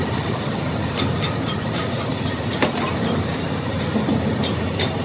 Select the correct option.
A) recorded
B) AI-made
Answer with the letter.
B